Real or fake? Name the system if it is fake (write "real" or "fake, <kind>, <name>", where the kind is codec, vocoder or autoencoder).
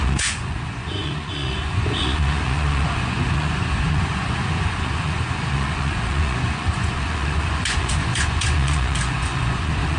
fake, vocoder, Vocos